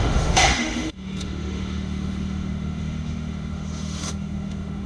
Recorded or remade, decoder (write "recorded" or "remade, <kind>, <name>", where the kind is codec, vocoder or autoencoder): remade, autoencoder, DAC-VAE